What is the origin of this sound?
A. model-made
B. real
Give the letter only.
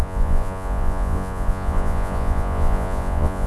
A